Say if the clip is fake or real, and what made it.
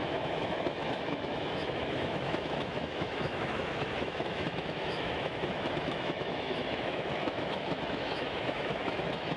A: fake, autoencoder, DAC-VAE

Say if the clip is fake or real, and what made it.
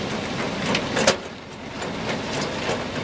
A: real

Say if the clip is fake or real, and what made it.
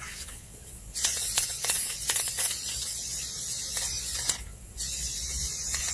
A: fake, vocoder, Vocos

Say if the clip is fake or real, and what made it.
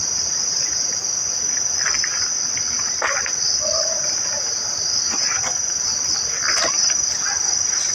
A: real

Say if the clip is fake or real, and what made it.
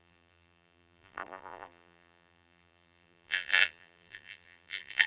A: fake, vocoder, BigVGAN v2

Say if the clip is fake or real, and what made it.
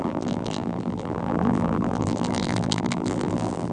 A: fake, vocoder, BigVGAN v2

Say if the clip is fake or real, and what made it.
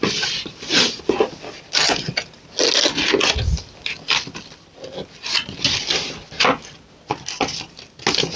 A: real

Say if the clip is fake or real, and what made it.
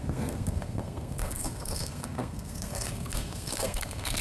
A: fake, codec, SNAC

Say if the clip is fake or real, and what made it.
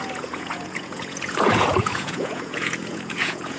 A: fake, vocoder, Vocos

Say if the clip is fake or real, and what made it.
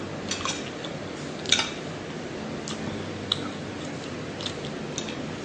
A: real